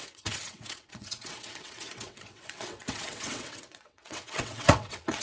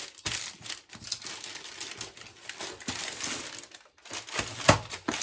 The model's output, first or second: first